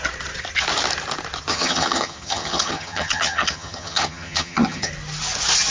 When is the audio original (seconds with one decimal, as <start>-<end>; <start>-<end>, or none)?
0.0-1.5; 4.9-5.7